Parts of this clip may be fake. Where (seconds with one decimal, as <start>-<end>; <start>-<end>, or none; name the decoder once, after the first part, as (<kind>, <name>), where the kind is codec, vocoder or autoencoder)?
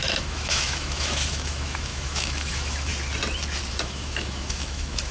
0.0-2.9 (autoencoder, DAC-VAE); 3.7-5.1